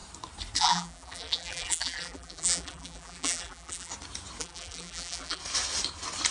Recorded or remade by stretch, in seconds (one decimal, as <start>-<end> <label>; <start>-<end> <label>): 0.0-0.6 recorded; 0.6-3.9 remade; 3.9-4.4 recorded; 4.4-5.4 remade; 5.4-6.3 recorded